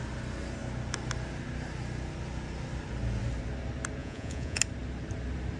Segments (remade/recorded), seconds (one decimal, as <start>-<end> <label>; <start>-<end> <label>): 0.0-4.0 recorded; 4.0-4.6 remade; 4.6-5.6 recorded